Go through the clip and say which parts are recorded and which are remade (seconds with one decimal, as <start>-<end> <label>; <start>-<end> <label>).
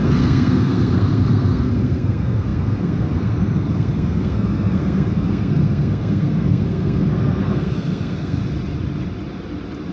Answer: 0.0-8.4 remade; 8.4-9.9 recorded